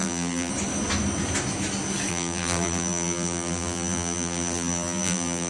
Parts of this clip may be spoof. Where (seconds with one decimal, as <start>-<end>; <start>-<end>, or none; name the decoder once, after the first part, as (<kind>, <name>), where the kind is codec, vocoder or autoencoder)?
0.0-0.5 (vocoder, BigVGAN v2); 2.1-5.5